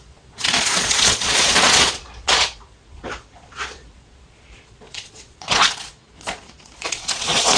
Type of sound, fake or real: fake